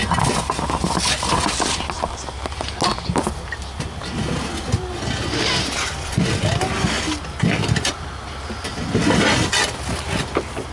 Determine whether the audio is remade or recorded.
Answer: recorded